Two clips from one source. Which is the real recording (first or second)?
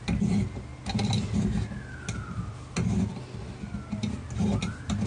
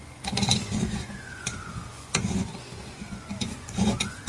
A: first